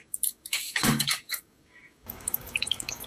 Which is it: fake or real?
fake